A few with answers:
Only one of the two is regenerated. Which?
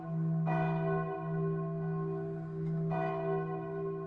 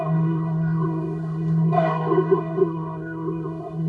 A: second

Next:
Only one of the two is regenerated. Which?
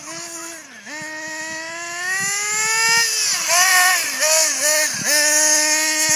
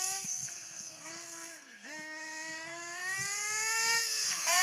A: second